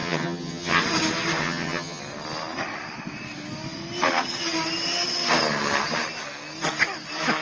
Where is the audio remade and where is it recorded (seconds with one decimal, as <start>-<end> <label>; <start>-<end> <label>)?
0.0-0.8 remade; 0.8-1.4 recorded; 1.4-2.0 remade; 2.0-7.4 recorded